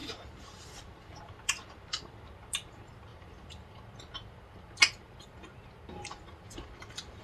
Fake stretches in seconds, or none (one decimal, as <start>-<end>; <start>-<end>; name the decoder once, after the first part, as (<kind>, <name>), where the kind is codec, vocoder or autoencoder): 0.0-1.2 (vocoder, BigVGAN v2); 3.1-3.8